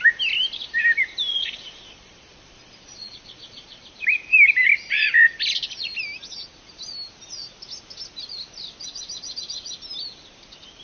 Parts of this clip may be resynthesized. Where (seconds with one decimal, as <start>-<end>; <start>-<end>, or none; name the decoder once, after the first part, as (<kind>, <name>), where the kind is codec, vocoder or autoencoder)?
1.3-3.8 (vocoder, Vocos)